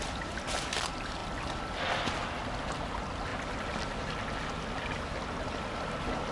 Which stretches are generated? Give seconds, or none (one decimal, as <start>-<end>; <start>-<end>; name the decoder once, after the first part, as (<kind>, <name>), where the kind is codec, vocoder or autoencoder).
none